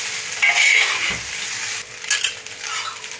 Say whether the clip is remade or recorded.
recorded